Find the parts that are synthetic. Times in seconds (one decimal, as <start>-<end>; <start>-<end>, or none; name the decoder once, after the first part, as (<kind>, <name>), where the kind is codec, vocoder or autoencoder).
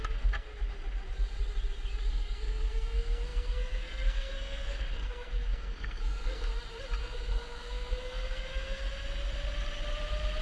0.0-0.5 (codec, SNAC); 2.1-6.5; 7.0-8.8